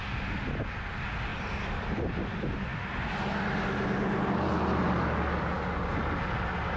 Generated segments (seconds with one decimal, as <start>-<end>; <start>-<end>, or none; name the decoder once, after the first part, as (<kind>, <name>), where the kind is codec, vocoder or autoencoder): 1.3-1.9 (vocoder, BigVGAN v2)